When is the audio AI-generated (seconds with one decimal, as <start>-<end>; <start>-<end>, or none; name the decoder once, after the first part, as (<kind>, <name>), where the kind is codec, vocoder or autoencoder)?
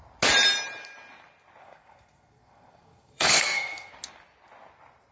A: 1.6-3.9 (codec, SNAC)